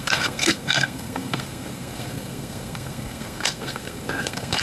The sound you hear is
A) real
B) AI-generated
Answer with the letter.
B